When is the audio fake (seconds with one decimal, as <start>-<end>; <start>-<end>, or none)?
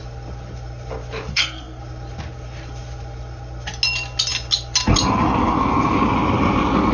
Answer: 1.3-1.8